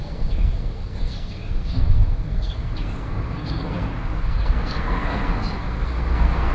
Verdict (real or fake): fake